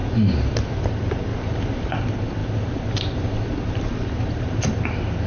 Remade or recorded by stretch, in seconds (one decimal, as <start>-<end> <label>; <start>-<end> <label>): 0.0-0.9 remade; 0.9-1.3 recorded; 1.3-1.9 remade; 1.9-2.4 recorded; 2.4-4.6 remade; 4.6-5.3 recorded